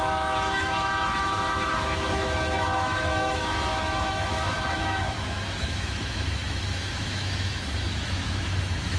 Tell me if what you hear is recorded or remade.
remade